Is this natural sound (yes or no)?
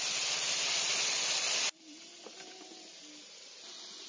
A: yes